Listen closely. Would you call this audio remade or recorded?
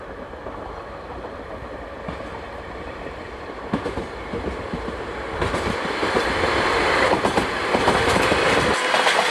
remade